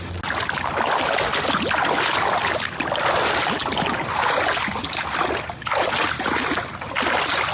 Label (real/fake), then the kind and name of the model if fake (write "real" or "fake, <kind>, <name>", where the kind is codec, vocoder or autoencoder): real